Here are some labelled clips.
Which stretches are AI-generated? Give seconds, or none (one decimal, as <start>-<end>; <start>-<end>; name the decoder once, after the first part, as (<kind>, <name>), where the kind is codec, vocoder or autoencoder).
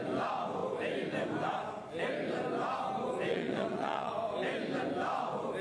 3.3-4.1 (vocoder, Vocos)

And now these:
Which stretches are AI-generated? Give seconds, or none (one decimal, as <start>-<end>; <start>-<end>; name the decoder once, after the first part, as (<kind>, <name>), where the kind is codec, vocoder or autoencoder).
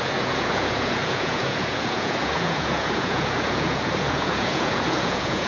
0.0-5.5 (vocoder, Vocos)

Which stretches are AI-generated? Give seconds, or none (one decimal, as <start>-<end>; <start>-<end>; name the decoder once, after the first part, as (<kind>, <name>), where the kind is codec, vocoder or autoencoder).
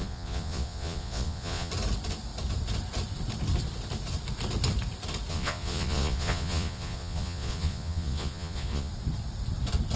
0.0-1.7 (vocoder, Vocos); 5.3-8.9